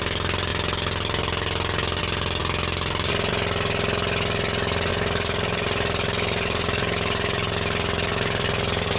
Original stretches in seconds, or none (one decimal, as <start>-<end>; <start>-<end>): 0.0-4.9